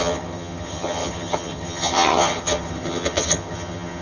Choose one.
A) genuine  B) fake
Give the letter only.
B